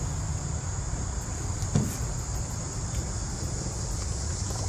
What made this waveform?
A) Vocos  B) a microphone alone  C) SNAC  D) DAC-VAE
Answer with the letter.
B